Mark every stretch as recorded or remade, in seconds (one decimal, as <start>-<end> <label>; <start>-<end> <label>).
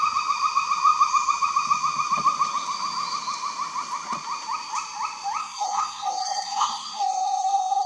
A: 0.0-5.4 recorded; 5.4-7.9 remade